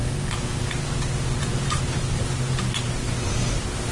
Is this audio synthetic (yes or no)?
no